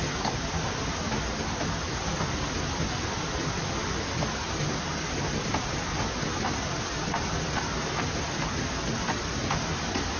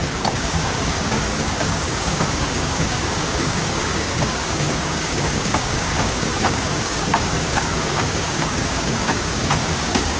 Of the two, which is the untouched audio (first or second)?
first